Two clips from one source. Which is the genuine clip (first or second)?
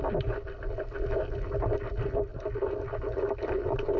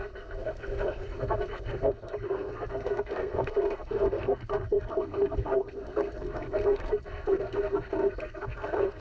first